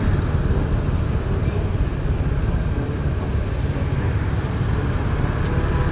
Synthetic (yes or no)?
no